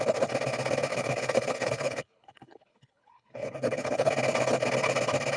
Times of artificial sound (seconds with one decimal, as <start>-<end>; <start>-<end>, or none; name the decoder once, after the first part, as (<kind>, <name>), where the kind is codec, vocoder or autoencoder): 0.9-4.1 (codec, HILCodec)